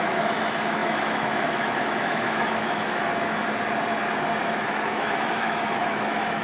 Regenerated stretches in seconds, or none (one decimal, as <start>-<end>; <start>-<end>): 0.0-3.4; 4.5-6.4